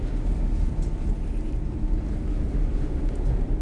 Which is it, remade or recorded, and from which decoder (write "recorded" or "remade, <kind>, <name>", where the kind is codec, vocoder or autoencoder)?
recorded